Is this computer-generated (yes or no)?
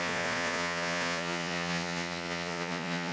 yes